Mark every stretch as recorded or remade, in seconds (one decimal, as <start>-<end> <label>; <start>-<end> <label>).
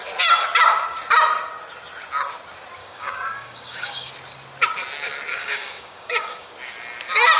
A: 0.0-2.8 recorded; 2.8-4.1 remade; 4.1-5.3 recorded; 5.3-6.5 remade; 6.5-7.4 recorded